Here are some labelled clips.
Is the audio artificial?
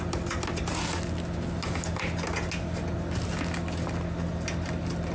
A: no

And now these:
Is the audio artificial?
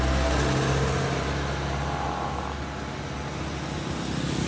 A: no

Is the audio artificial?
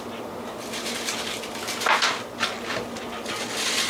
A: no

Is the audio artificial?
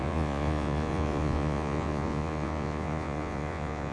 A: yes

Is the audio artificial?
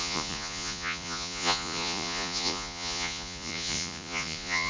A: yes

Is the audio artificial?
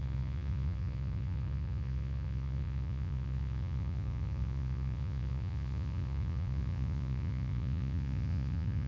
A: yes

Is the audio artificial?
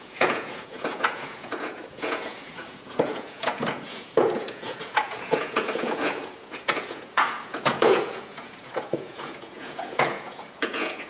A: yes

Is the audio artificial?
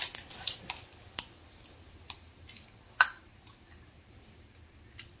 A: no